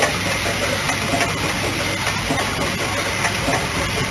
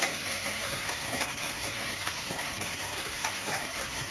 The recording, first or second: first